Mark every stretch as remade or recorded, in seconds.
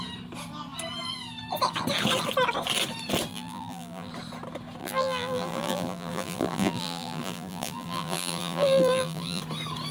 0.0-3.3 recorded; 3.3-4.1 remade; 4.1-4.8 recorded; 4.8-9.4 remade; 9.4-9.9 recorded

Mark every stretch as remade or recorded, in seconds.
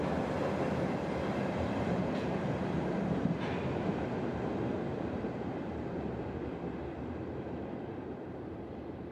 0.0-9.1 remade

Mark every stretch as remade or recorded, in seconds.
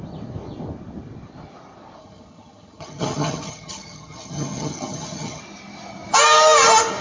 0.0-2.0 recorded; 2.0-5.4 remade; 5.4-7.0 recorded